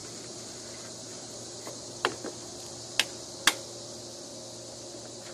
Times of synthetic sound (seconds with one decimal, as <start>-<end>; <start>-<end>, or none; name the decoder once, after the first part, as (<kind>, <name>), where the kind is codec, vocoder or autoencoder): 0.0-0.6 (vocoder, BigVGAN v2); 1.1-1.7